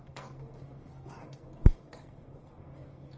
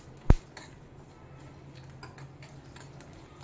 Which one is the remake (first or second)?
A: first